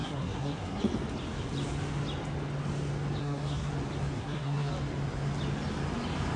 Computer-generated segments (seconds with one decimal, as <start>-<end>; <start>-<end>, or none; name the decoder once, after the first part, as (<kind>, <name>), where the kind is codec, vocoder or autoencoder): 0.0-0.8 (codec, SNAC); 3.2-3.7; 4.2-4.7